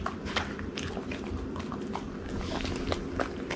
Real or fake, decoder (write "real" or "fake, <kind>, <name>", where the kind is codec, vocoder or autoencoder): real